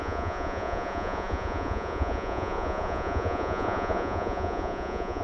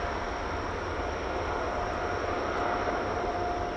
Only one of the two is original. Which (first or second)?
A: second